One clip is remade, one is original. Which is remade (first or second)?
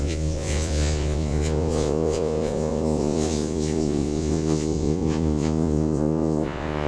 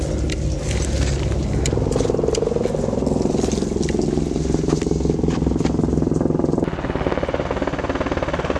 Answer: first